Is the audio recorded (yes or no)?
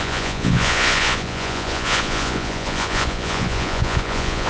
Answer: no